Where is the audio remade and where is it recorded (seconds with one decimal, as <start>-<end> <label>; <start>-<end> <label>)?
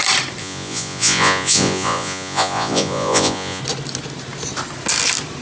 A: 0.0-0.4 recorded; 0.4-3.6 remade; 3.6-5.4 recorded